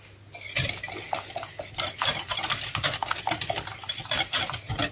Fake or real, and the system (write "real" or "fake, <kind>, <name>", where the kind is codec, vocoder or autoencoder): real